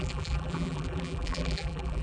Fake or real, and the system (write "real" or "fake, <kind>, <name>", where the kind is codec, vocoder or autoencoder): fake, vocoder, BigVGAN v2